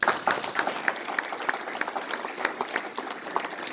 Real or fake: real